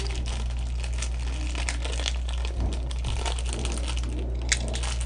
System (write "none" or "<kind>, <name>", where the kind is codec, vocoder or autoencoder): none